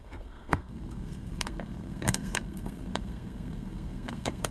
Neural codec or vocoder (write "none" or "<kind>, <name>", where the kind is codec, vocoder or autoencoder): codec, SNAC